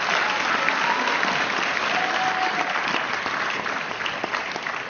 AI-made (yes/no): no